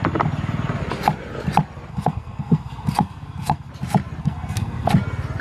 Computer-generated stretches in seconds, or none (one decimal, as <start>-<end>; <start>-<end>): 1.9-3.7; 4.2-4.9